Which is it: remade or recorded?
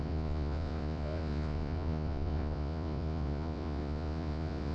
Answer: remade